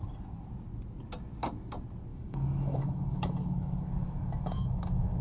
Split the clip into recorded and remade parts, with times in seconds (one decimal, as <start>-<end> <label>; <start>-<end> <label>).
0.0-2.1 recorded; 2.1-5.2 remade